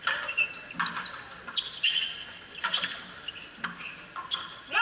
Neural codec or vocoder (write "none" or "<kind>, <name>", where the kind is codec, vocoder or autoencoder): none